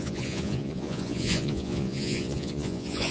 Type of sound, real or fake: fake